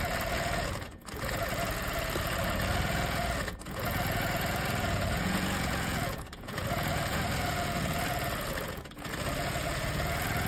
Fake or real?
fake